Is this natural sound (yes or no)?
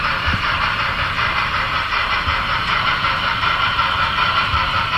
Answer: no